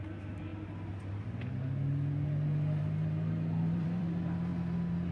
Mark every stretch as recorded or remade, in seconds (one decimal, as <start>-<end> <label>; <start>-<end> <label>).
0.0-0.5 remade; 0.5-2.8 recorded; 2.8-4.5 remade; 4.5-5.1 recorded